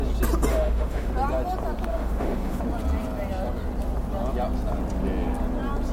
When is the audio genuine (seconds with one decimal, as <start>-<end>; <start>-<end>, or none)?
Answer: 0.0-0.5; 1.1-1.9; 2.6-5.9